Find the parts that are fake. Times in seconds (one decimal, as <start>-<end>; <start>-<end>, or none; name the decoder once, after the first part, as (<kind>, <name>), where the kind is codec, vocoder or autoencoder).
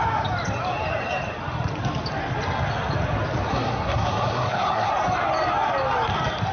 3.5-4.9 (codec, SNAC)